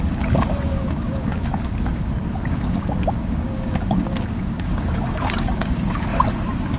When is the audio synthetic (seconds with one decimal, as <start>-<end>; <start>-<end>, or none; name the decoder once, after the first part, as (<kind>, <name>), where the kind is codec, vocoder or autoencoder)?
0.0-6.1 (codec, DAC)